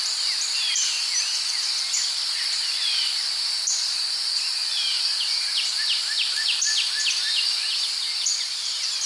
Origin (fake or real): fake